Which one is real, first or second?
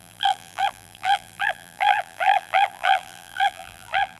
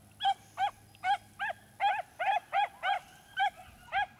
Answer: second